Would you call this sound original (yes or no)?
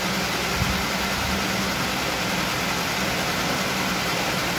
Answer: yes